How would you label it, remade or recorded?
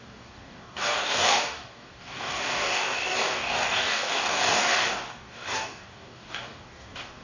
remade